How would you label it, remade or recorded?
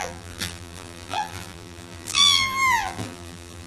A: remade